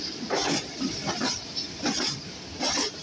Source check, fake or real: real